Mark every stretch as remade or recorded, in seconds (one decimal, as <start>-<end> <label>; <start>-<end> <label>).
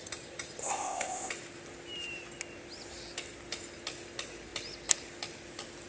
0.0-0.6 recorded; 0.6-1.3 remade; 1.3-5.9 recorded